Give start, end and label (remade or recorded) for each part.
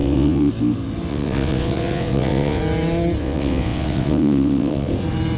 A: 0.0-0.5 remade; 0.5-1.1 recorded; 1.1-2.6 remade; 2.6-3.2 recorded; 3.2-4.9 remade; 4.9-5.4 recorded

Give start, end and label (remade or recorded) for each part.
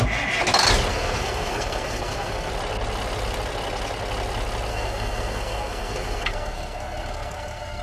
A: 0.0-0.9 recorded; 0.9-2.5 remade; 2.5-4.7 recorded; 4.7-7.8 remade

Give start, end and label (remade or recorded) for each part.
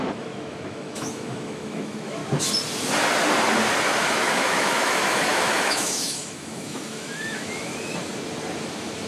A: 0.0-2.2 remade; 2.2-4.0 recorded; 4.0-7.7 remade; 7.7-8.6 recorded; 8.6-9.1 remade